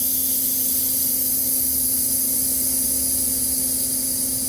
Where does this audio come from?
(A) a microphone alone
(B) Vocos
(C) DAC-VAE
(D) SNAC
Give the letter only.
A